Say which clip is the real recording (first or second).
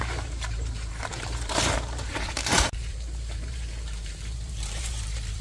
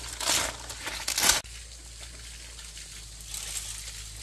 second